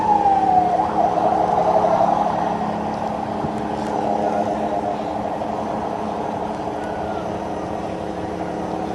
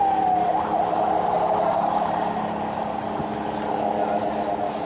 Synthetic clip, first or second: second